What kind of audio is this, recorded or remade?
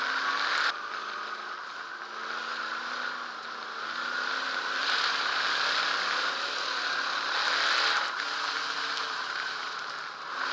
recorded